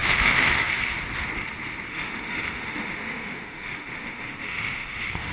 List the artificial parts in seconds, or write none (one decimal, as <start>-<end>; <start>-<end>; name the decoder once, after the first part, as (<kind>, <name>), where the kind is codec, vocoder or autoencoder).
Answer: 0.0-0.6 (autoencoder, DAC-VAE); 1.9-5.3